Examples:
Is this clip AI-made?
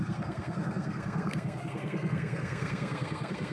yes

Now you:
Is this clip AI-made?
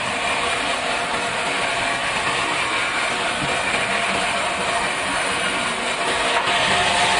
no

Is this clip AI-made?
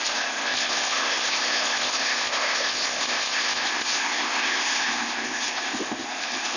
yes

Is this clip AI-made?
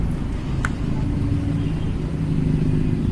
no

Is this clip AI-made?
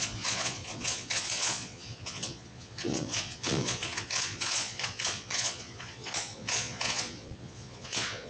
yes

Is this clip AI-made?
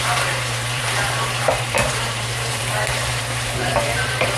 yes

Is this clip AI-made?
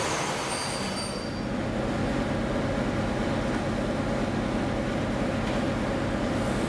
no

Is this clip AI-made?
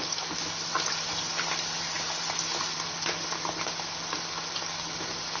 no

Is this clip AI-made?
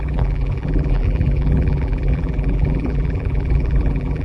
yes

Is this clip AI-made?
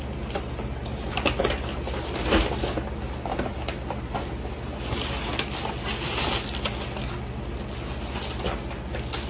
no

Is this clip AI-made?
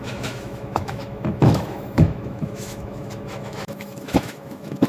yes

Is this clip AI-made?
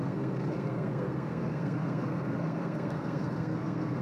yes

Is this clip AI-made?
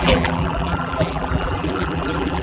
yes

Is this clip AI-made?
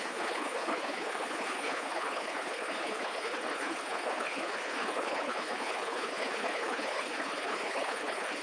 yes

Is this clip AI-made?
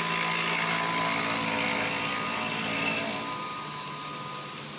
no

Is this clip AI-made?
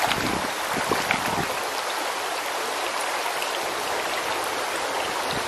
no